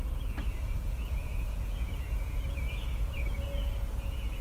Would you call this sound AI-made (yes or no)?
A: yes